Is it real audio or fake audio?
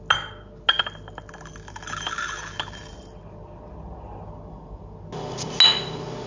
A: real